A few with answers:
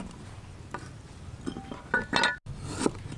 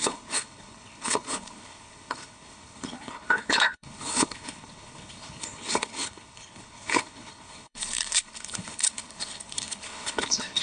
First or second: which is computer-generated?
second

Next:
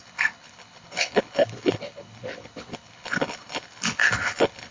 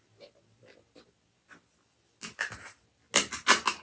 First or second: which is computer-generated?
first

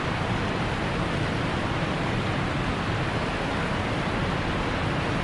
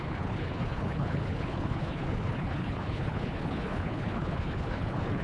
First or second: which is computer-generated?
second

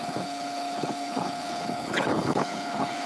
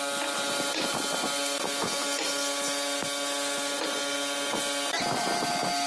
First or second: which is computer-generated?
first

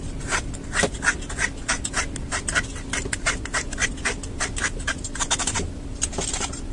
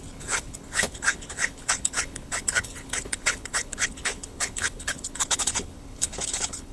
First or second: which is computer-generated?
second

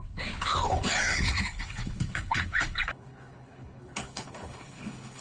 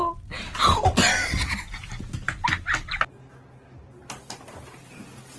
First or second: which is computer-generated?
first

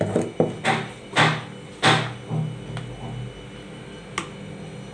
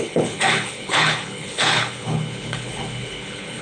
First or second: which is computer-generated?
second